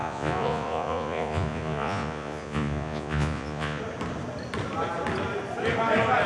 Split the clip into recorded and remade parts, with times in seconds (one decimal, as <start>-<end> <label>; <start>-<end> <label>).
0.0-3.8 remade; 3.8-6.3 recorded